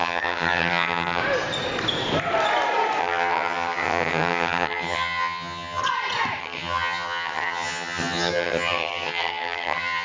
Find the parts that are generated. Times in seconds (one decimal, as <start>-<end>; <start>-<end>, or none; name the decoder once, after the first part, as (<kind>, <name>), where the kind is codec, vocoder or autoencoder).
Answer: 0.0-1.2 (vocoder, HiFi-GAN); 3.0-5.8; 6.4-10.0